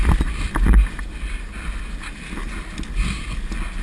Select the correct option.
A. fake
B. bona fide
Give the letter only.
B